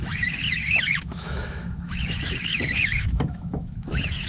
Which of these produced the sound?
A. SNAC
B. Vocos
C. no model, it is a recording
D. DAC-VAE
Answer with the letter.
D